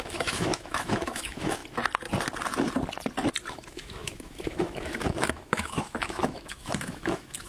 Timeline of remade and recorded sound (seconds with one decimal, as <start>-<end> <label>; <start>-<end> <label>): 0.0-1.6 remade; 1.6-3.5 recorded; 3.5-7.5 remade